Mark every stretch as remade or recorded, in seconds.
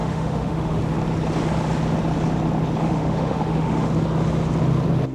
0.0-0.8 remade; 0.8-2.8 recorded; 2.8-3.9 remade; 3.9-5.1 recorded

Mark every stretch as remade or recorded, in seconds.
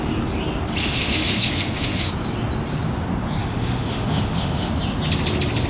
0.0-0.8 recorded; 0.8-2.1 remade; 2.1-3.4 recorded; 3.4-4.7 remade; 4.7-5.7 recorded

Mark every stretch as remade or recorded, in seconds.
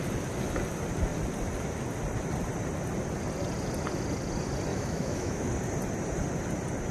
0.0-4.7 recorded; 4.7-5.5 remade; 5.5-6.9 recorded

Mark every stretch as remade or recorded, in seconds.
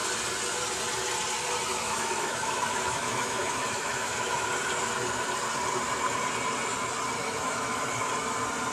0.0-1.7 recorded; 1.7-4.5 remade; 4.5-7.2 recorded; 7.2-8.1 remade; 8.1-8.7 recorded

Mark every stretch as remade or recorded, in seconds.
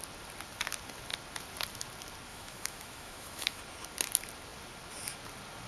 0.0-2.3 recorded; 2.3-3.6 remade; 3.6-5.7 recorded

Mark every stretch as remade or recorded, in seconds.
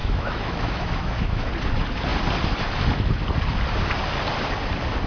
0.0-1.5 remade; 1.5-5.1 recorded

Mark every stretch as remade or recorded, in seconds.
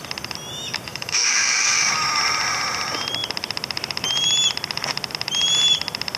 0.0-0.9 recorded; 0.9-2.2 remade; 2.2-6.2 recorded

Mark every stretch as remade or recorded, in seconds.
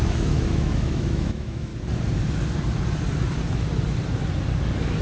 0.0-1.7 remade; 1.7-5.0 recorded